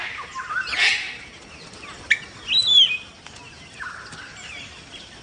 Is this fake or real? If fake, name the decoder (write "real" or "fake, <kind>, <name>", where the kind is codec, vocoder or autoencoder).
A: real